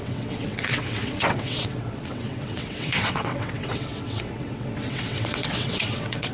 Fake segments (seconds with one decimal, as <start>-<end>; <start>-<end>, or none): 0.0-6.3